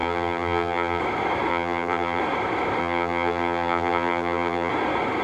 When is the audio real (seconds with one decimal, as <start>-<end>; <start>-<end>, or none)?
1.0-1.5; 2.2-2.8; 4.7-5.2